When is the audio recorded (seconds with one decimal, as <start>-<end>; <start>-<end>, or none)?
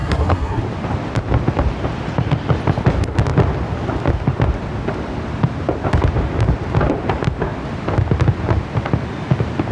0.6-9.7